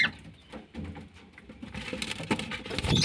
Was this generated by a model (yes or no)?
no